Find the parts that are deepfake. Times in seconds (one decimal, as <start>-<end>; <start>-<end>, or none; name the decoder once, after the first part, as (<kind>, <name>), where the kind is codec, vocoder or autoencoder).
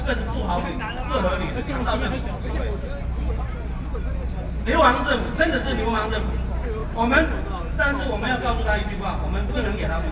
none